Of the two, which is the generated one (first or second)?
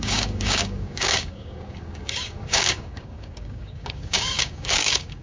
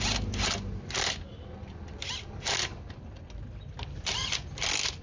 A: first